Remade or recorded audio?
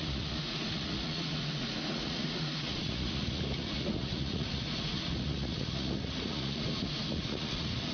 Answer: remade